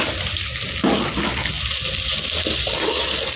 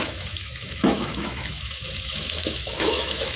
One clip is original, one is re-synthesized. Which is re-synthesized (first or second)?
second